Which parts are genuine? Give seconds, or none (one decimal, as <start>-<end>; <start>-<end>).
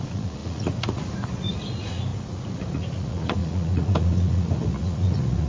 none